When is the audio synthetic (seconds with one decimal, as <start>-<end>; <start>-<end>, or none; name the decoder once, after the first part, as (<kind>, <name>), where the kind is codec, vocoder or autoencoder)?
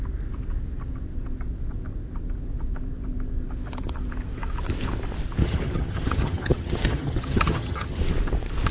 5.4-8.0 (vocoder, HiFi-GAN)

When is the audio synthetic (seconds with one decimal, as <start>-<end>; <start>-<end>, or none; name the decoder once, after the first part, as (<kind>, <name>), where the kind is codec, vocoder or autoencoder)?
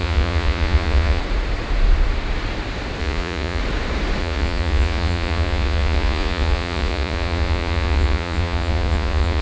0.0-1.2 (vocoder, Vocos); 3.0-3.6; 4.2-9.4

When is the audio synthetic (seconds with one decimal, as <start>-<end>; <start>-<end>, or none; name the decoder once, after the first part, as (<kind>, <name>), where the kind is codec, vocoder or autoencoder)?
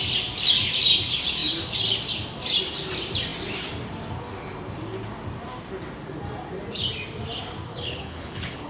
7.7-8.7 (codec, HILCodec)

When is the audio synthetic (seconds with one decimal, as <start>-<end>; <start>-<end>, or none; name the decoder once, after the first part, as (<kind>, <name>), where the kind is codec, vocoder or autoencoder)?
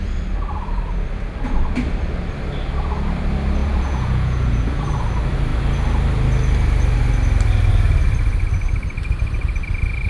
3.6-4.8 (vocoder, Vocos)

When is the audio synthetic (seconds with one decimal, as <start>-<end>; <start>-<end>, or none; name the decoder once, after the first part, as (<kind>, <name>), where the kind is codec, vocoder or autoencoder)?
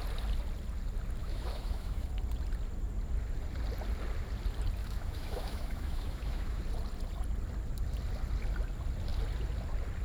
1.2-2.1 (autoencoder, DAC-VAE); 4.8-6.6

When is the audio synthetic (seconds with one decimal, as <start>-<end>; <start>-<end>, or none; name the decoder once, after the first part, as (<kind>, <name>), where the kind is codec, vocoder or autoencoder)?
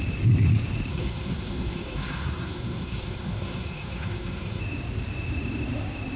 0.9-4.6 (codec, SNAC)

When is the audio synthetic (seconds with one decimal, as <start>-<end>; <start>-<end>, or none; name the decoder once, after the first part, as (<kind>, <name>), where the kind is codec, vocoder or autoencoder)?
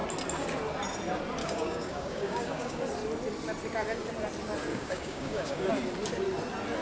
1.4-2.9 (codec, DAC); 4.7-5.7